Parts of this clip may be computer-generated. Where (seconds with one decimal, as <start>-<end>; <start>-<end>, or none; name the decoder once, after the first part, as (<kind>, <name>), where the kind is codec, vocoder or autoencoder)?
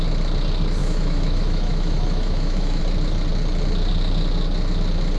0.8-2.8 (autoencoder, DAC-VAE)